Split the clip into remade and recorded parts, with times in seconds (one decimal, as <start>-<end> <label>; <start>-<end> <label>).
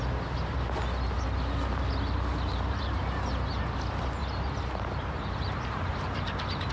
0.0-2.5 recorded; 2.5-3.1 remade; 3.1-4.2 recorded; 4.2-6.7 remade